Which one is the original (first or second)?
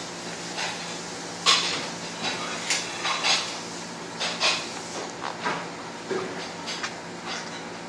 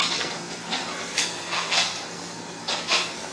first